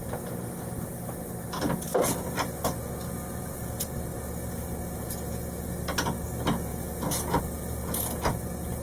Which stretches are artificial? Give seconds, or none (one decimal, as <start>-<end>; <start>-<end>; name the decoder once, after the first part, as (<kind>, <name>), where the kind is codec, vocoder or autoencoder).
none